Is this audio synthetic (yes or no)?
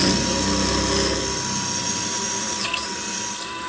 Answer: no